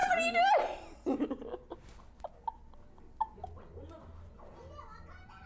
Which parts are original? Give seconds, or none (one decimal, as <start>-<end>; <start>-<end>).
0.0-5.5